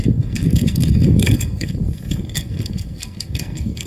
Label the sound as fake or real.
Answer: fake